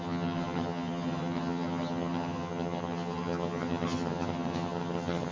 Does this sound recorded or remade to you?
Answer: remade